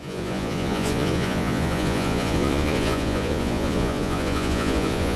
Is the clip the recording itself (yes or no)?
no